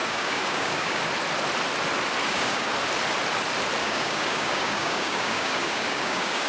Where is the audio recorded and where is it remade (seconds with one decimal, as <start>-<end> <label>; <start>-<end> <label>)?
0.0-1.0 remade; 1.0-2.2 recorded; 2.2-2.7 remade; 2.7-3.8 recorded; 3.8-6.5 remade